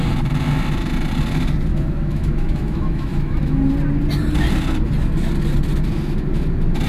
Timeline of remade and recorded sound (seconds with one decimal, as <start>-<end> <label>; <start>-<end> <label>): 0.0-1.7 recorded; 1.7-3.7 remade; 3.7-6.9 recorded